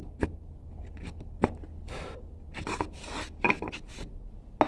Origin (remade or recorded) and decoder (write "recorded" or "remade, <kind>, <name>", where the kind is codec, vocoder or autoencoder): recorded